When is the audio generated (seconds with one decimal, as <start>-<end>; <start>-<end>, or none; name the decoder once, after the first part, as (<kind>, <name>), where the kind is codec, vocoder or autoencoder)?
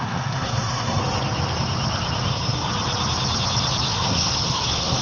0.0-1.0 (codec, SNAC); 2.3-2.7; 3.9-5.0